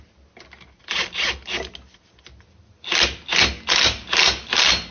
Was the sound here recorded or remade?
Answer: recorded